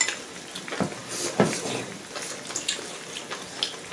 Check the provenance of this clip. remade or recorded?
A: recorded